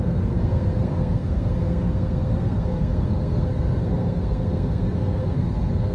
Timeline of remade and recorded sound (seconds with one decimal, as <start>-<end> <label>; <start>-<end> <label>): 0.0-5.9 remade